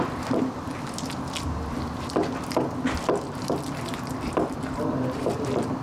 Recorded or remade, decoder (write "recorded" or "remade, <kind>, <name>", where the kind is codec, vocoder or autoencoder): recorded